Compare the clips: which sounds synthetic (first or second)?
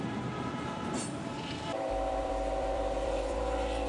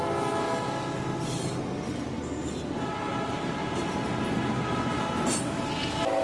first